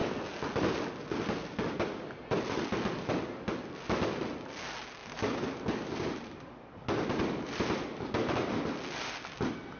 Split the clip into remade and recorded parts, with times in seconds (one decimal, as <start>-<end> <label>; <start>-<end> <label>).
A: 0.0-5.0 recorded; 5.0-8.5 remade; 8.5-9.8 recorded

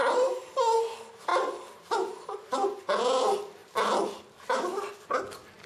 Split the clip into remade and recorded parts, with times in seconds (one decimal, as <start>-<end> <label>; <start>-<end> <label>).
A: 0.0-0.6 remade; 0.6-1.3 recorded; 1.3-2.8 remade; 2.8-3.6 recorded; 3.6-4.1 remade; 4.1-5.7 recorded